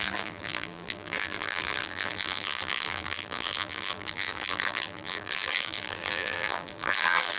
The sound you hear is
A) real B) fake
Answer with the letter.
B